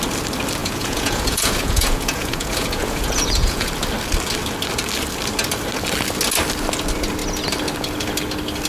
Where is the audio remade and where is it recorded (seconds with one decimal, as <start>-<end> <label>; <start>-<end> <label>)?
0.0-0.6 recorded; 0.6-3.7 remade; 3.7-8.7 recorded